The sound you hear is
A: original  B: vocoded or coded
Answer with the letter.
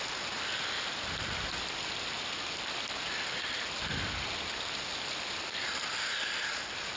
A